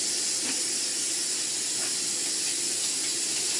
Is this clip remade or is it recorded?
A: recorded